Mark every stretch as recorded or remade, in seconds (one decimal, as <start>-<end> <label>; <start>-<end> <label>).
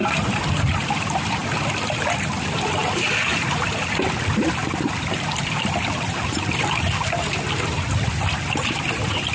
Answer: 0.0-9.3 recorded